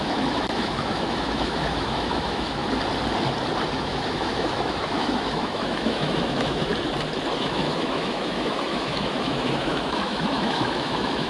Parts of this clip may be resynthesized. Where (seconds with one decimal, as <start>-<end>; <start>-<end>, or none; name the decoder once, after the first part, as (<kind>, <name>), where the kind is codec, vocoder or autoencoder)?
0.0-2.6 (autoencoder, DAC-VAE); 3.7-6.7; 7.4-11.3